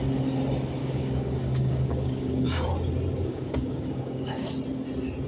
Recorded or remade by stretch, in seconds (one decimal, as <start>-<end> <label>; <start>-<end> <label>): 0.0-0.8 recorded; 0.8-2.6 remade; 2.6-3.3 recorded; 3.3-4.5 remade; 4.5-5.3 recorded